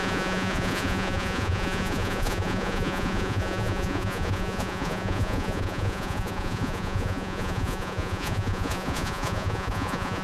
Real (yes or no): no